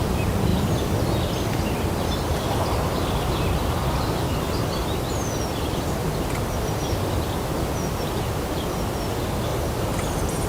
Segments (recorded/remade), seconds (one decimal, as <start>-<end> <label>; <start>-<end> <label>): 0.0-9.5 recorded; 9.5-10.5 remade